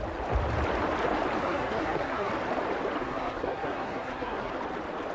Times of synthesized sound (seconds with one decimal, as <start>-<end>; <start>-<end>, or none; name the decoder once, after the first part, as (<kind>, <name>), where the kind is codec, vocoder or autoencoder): 1.4-2.3 (codec, SNAC); 3.0-4.5